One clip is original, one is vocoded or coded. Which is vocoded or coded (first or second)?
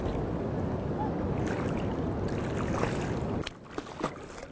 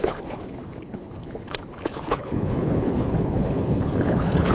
second